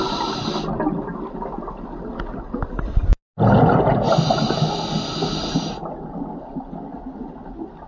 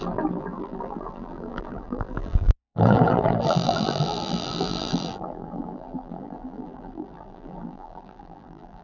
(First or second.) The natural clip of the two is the first